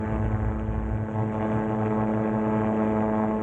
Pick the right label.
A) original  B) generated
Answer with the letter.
A